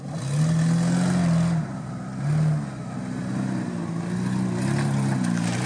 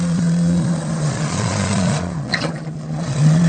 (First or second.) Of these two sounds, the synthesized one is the second